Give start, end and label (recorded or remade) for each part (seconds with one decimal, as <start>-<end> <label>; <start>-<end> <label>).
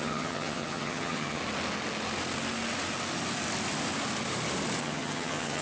0.0-1.4 remade; 1.4-4.8 recorded; 4.8-5.6 remade